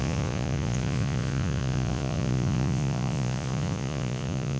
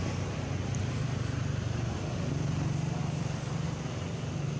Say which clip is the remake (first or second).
first